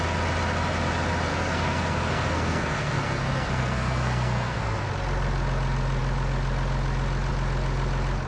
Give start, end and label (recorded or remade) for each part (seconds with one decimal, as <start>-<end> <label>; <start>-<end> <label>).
0.0-1.3 recorded; 1.3-4.9 remade; 4.9-8.3 recorded